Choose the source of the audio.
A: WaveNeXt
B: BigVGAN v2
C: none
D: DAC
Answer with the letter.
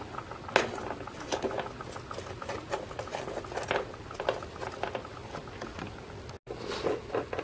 C